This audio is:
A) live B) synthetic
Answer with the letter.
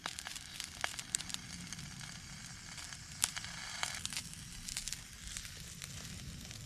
B